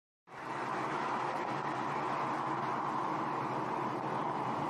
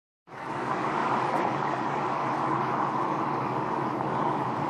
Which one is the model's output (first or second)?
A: second